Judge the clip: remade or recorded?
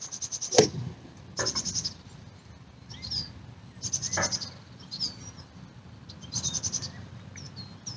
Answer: recorded